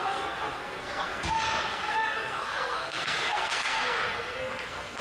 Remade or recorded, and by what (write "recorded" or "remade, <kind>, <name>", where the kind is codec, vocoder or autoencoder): remade, codec, SNAC